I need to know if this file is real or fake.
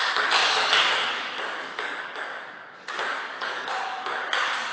fake